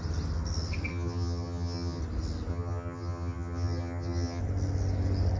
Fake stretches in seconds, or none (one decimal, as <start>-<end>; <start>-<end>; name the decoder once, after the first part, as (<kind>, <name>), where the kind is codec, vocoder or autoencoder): 0.9-2.0 (vocoder, HiFi-GAN); 2.5-4.4

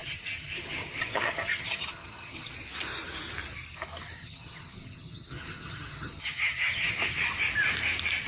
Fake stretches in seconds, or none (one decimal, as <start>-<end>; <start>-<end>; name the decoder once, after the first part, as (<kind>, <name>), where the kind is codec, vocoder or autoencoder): 0.0-2.5 (vocoder, HiFi-GAN); 4.2-7.0

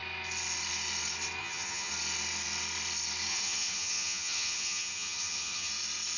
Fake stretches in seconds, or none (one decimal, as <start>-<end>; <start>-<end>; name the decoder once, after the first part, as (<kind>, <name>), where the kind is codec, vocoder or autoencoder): 1.4-1.9 (vocoder, HiFi-GAN); 3.3-5.7

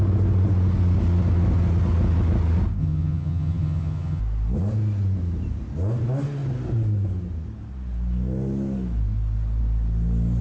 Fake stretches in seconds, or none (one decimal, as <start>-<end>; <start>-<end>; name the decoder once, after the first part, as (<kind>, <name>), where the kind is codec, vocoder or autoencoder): 2.8-4.2 (vocoder, HiFi-GAN)

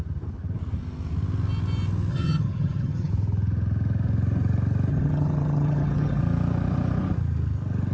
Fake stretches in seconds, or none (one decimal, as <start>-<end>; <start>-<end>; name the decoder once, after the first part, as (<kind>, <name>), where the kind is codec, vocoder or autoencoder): 2.1-3.1 (vocoder, HiFi-GAN); 4.9-6.2

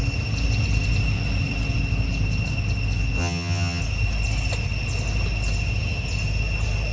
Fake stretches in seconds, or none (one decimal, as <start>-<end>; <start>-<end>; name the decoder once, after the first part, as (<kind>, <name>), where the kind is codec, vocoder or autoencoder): 3.2-3.8 (vocoder, HiFi-GAN)

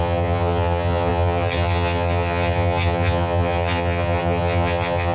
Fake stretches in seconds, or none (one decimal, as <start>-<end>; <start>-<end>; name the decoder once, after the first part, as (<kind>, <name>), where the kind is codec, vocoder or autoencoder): 0.0-5.1 (vocoder, HiFi-GAN)

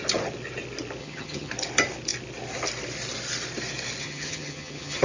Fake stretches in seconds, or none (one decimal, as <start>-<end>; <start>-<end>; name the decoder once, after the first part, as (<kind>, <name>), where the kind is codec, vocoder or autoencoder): 1.0-1.5 (vocoder, HiFi-GAN); 4.0-5.0